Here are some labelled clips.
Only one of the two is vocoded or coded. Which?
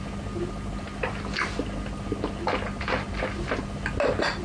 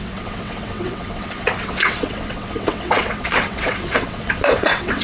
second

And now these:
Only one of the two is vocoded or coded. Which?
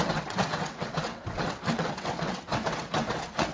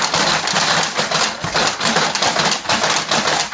first